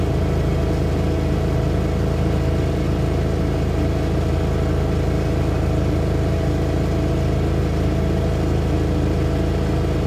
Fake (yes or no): no